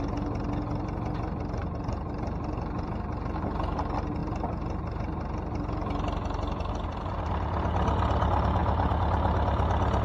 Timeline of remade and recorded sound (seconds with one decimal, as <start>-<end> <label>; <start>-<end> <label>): 0.0-1.6 recorded; 1.6-2.9 remade; 2.9-10.0 recorded